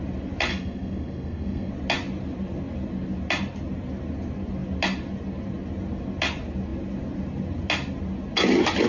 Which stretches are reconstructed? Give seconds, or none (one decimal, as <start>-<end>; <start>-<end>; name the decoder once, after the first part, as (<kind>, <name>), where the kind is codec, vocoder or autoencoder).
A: 0.5-1.7 (codec, SNAC)